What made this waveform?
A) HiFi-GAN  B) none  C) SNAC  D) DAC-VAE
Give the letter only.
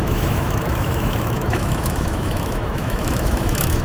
D